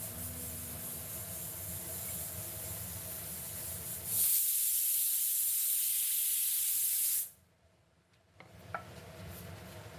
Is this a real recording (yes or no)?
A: yes